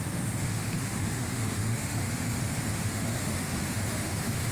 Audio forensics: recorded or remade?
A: remade